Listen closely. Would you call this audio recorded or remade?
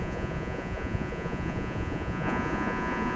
remade